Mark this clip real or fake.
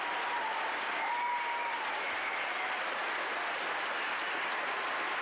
real